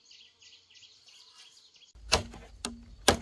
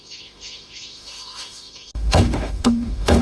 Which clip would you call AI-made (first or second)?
second